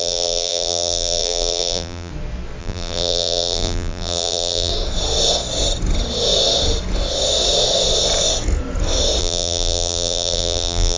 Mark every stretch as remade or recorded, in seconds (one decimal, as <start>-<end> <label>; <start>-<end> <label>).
0.0-2.1 remade; 2.1-2.6 recorded; 2.6-4.7 remade; 4.7-9.2 recorded; 9.2-11.0 remade